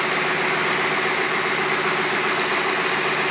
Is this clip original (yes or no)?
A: yes